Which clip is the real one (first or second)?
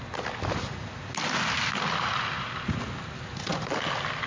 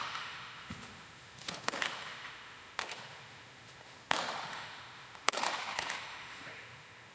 first